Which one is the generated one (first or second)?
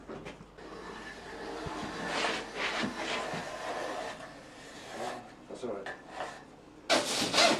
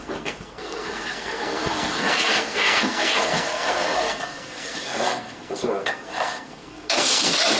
second